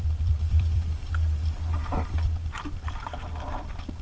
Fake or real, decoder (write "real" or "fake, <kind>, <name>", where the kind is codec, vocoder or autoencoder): fake, vocoder, BigVGAN v2